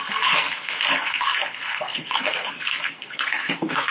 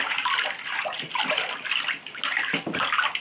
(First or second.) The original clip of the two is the second